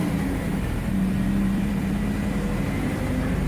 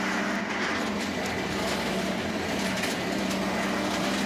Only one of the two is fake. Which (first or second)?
first